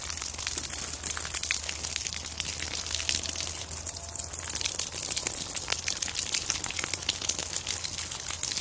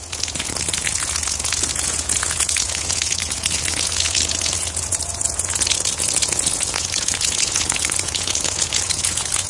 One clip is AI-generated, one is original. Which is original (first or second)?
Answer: first